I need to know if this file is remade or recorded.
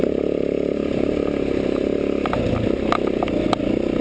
recorded